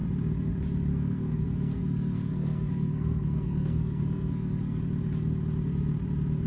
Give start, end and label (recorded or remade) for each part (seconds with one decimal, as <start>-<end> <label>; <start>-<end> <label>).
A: 0.0-0.9 recorded; 0.9-4.8 remade; 4.8-6.5 recorded